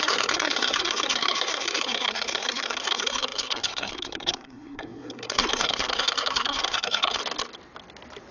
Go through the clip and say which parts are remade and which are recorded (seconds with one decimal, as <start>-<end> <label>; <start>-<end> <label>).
0.0-7.2 remade; 7.2-8.3 recorded